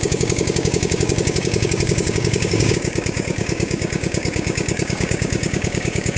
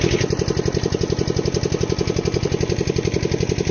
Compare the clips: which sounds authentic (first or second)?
second